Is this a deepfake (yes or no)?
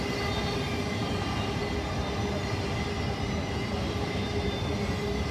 no